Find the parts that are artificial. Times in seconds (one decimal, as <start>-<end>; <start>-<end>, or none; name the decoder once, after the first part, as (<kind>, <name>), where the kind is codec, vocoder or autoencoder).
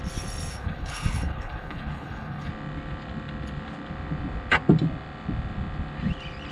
0.5-2.5 (codec, HILCodec)